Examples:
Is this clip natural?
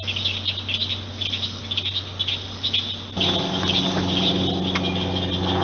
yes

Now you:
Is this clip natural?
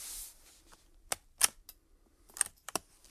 yes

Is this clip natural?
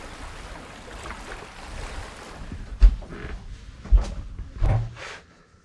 yes